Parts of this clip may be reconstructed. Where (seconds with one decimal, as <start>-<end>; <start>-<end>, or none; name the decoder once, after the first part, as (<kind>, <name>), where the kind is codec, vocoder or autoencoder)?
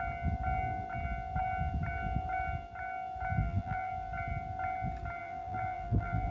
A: 3.4-3.9 (vocoder, BigVGAN v2); 5.2-6.3